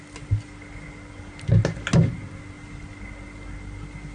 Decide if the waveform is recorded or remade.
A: recorded